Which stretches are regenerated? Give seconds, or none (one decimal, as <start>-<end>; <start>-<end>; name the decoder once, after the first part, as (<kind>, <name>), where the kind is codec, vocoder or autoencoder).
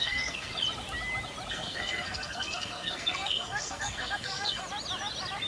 0.0-0.5 (codec, SNAC); 1.5-4.6